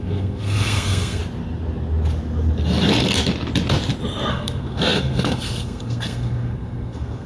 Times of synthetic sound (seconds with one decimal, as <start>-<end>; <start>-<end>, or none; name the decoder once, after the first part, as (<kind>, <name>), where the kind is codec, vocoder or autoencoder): 0.0-1.2 (codec, SNAC); 4.3-7.3